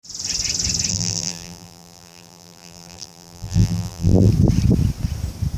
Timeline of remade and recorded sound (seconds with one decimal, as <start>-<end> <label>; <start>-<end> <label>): 0.0-0.9 recorded; 0.9-4.3 remade; 4.3-5.6 recorded